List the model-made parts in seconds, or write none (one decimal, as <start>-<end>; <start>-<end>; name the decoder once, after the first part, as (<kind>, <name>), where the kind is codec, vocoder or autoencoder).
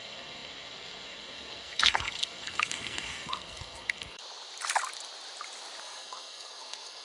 0.0-4.2 (codec, SNAC); 5.8-7.0